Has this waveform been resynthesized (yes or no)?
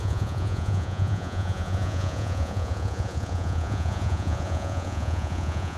yes